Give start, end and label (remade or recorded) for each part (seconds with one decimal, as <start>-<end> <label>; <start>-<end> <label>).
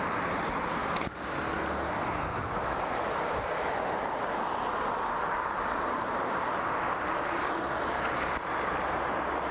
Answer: 0.0-9.5 recorded